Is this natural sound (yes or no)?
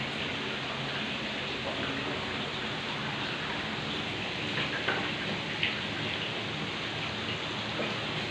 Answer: yes